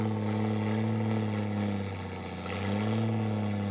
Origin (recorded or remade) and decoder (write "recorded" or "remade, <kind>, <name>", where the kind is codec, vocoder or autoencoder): recorded